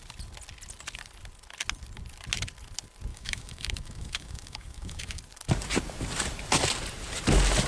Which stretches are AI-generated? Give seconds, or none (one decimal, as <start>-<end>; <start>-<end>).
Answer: 3.1-5.2